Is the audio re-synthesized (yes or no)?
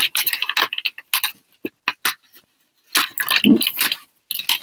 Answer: no